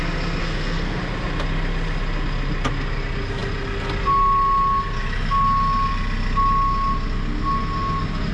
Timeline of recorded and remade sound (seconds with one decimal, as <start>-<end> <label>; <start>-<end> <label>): 0.0-0.4 recorded; 0.4-1.0 remade; 1.0-8.3 recorded